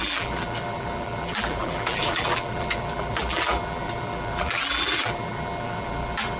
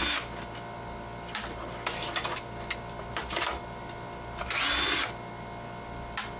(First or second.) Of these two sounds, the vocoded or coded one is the first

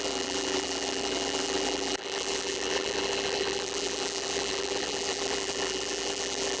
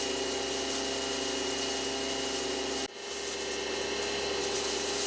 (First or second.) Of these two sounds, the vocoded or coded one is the first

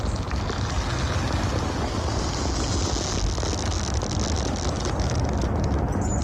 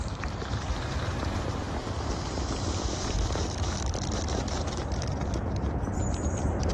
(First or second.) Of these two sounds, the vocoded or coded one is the second